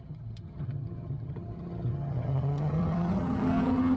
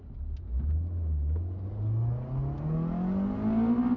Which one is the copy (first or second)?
first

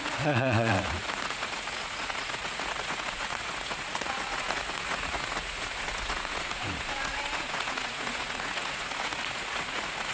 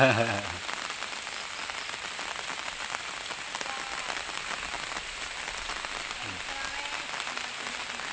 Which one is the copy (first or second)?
first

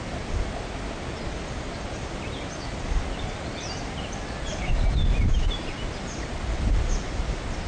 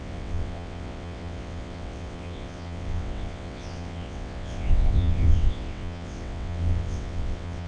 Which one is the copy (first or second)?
second